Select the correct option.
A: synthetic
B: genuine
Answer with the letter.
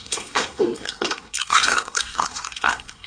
A